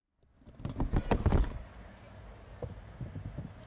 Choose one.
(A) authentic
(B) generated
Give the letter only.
A